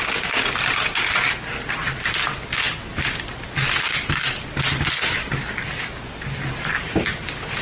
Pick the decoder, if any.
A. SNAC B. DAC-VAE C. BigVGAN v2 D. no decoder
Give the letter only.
D